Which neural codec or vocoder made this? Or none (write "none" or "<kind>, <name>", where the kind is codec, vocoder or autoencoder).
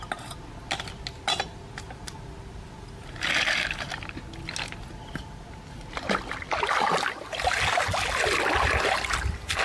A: none